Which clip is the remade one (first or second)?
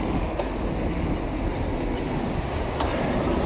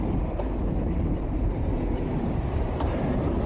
second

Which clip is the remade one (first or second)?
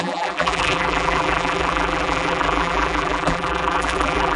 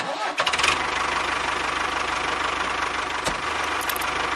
first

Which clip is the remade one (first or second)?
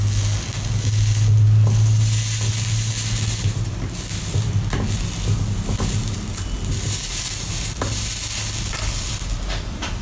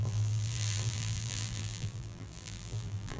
second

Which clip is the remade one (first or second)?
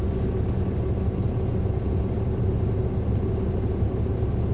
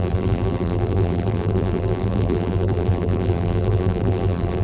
second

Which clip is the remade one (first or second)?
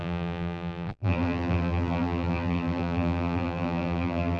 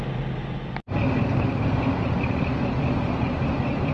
first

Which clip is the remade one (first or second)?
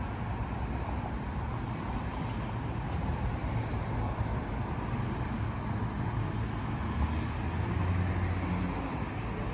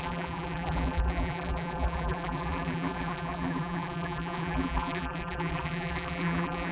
second